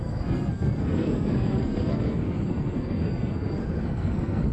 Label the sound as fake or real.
fake